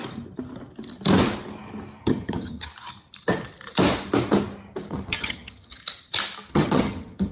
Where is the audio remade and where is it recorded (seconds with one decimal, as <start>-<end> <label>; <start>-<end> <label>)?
0.0-2.0 recorded; 2.0-2.7 remade; 2.7-4.9 recorded; 4.9-5.8 remade; 5.8-6.5 recorded; 6.5-7.3 remade